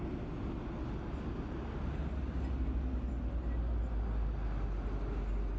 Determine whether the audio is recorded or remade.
recorded